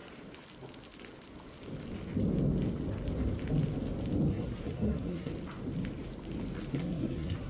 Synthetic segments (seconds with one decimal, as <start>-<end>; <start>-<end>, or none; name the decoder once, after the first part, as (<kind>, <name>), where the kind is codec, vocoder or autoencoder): 4.3-5.3 (codec, SNAC); 6.7-7.5

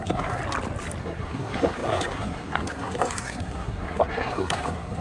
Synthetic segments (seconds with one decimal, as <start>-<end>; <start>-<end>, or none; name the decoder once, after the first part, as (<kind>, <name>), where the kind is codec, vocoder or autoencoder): 0.0-0.4 (codec, SNAC); 1.0-5.0

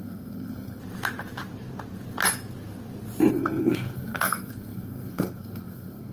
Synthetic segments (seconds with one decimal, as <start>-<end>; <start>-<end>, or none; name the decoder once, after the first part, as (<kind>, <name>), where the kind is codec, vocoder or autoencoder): 0.0-0.8 (codec, SNAC); 3.3-6.1

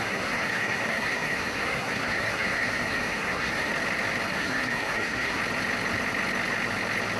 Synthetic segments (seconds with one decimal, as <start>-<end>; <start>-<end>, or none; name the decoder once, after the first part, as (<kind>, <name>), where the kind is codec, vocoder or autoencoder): 0.0-3.7 (codec, SNAC); 4.3-5.4